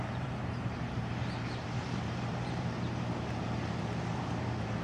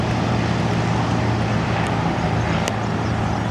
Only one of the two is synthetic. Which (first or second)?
first